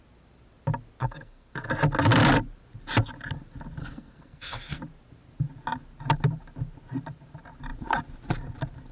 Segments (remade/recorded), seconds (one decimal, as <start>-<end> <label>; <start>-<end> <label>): 0.0-1.0 recorded; 1.0-1.7 remade; 1.7-3.8 recorded; 3.8-4.8 remade; 4.8-8.9 recorded